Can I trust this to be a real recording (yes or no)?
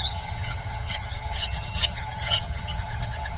no